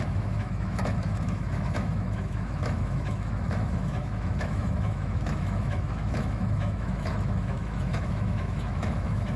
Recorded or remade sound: remade